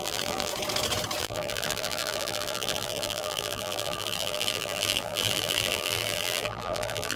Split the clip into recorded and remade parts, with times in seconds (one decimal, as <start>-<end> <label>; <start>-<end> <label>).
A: 0.0-0.5 remade; 0.5-1.2 recorded; 1.2-7.2 remade